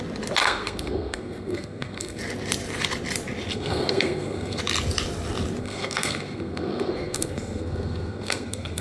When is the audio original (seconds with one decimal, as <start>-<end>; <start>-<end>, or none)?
0.0-0.4; 2.2-3.5; 4.6-5.6